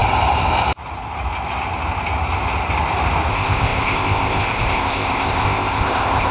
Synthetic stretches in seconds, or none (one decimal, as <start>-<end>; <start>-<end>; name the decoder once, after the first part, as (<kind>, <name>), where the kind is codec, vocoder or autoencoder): 3.3-6.3 (codec, ZipCodec)